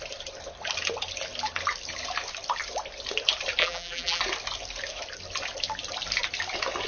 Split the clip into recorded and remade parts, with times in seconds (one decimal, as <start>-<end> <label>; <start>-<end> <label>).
0.0-3.6 recorded; 3.6-4.2 remade; 4.2-6.9 recorded